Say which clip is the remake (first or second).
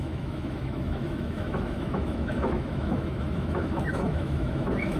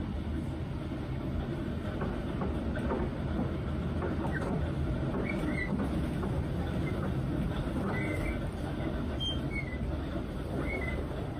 first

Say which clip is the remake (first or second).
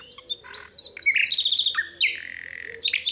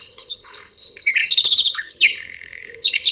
second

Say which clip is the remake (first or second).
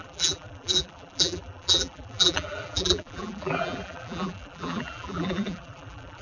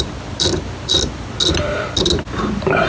first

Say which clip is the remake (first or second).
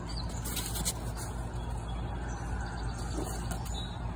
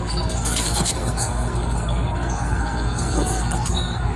second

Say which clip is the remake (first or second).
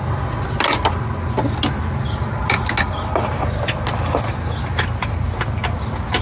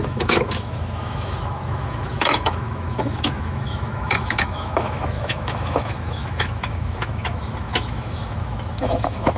second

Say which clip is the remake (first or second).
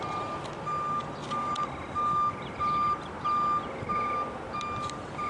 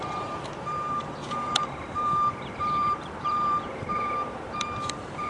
second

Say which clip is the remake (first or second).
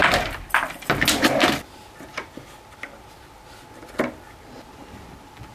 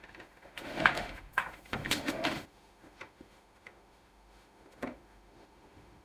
second